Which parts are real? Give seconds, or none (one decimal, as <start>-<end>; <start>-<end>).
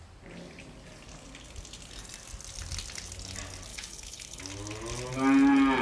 0.0-3.7; 4.4-5.8